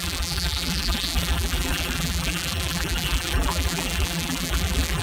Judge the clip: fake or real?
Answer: fake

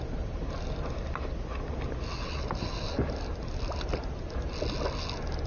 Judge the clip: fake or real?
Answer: real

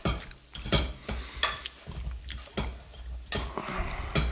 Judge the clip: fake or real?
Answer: real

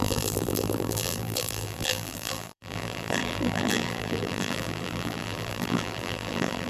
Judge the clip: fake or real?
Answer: fake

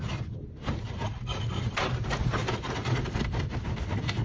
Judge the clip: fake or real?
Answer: real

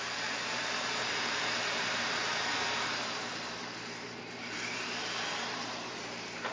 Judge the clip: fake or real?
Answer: fake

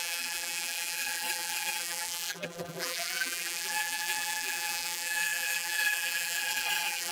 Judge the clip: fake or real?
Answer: fake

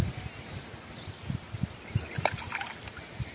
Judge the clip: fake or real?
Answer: real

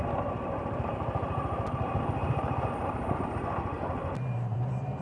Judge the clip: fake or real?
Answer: fake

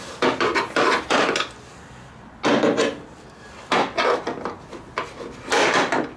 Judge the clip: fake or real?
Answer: real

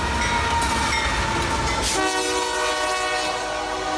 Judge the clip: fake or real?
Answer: real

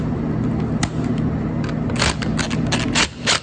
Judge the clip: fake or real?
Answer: real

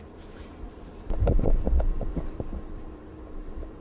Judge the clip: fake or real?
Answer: fake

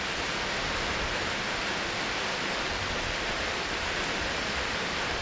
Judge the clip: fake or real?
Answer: fake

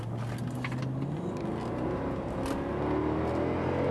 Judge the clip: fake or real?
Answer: real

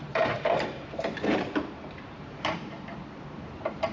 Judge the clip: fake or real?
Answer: fake